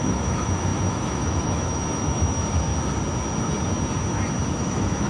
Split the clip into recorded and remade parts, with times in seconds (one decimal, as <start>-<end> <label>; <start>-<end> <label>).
0.0-2.7 remade; 2.7-4.5 recorded; 4.5-5.1 remade